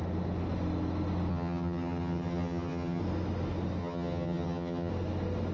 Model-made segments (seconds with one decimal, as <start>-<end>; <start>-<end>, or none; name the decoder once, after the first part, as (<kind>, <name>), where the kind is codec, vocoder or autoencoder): 1.3-3.0 (vocoder, HiFi-GAN); 3.8-4.9